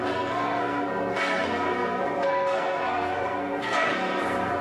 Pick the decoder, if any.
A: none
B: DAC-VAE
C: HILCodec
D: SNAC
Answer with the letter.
D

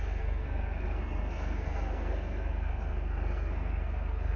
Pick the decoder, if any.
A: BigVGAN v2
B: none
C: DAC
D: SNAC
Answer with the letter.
D